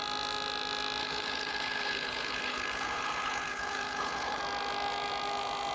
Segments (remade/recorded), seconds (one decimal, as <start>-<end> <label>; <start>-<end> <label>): 0.0-1.0 recorded; 1.0-4.4 remade; 4.4-5.7 recorded